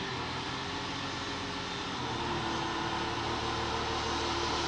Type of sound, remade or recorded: recorded